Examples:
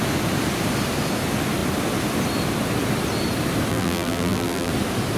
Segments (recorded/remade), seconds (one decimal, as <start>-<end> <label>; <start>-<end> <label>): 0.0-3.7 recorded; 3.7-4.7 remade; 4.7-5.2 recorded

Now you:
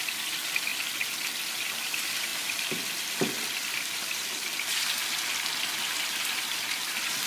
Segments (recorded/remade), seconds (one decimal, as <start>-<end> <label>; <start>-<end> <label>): 0.0-7.3 remade

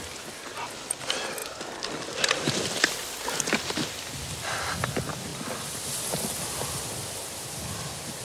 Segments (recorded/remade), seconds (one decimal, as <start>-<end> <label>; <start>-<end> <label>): 0.0-8.2 recorded